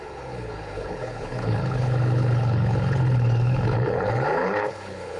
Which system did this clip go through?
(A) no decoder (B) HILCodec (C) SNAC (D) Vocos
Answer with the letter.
B